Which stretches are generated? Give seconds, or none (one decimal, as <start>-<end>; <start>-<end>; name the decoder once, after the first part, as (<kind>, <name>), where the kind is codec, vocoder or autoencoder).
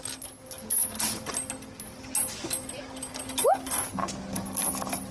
4.0-5.1 (vocoder, BigVGAN v2)